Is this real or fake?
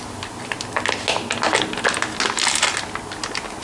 real